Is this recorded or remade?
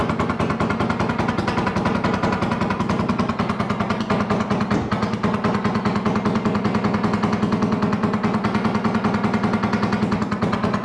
recorded